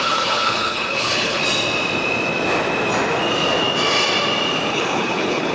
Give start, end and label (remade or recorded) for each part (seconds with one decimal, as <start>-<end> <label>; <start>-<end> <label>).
0.0-1.4 remade; 1.4-4.7 recorded; 4.7-5.5 remade